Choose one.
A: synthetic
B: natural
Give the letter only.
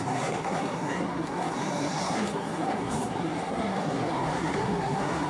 A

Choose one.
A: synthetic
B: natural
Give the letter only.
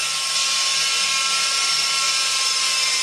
B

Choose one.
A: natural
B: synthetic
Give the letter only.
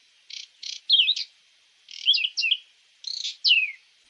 A